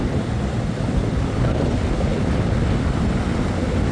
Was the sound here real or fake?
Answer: real